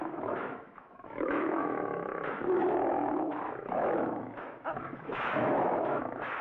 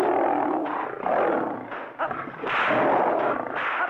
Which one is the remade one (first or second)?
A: first